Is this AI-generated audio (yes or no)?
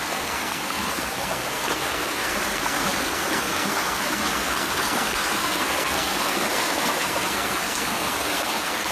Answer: yes